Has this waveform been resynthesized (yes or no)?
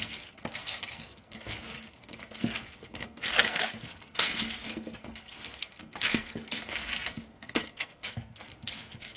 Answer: yes